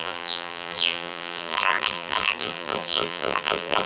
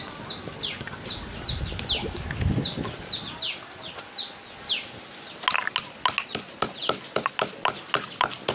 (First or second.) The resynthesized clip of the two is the first